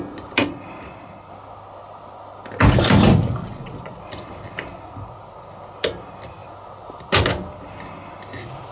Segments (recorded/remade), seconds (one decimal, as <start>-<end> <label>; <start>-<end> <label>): 0.0-3.4 recorded; 3.4-4.0 remade; 4.0-8.7 recorded